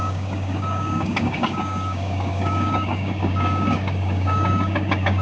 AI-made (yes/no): yes